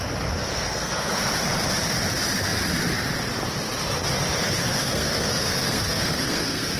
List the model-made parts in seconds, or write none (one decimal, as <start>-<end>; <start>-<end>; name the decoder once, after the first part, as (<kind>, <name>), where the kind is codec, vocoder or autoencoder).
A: 0.5-1.1 (codec, SNAC); 4.6-6.8